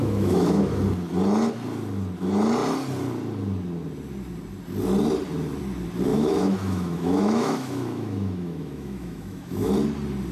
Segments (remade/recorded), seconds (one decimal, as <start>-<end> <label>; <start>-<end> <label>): 0.0-0.8 remade; 0.8-6.1 recorded; 6.1-9.7 remade; 9.7-10.3 recorded